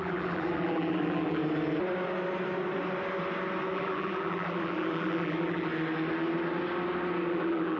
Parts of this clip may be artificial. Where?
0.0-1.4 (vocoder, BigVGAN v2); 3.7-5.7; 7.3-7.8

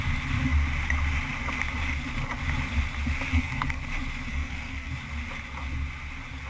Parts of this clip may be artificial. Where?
3.3-3.8 (codec, SNAC); 4.3-4.9

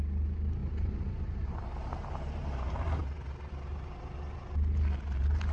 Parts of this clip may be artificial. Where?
0.6-3.0 (vocoder, BigVGAN v2)

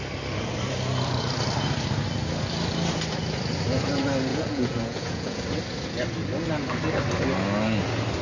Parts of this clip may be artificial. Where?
4.3-5.4 (vocoder, Vocos)

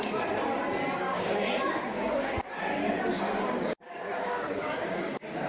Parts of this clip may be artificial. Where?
1.0-1.5 (codec, DAC); 1.9-5.5

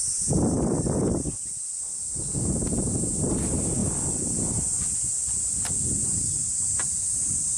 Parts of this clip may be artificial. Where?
none

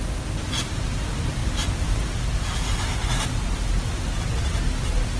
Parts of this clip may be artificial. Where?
none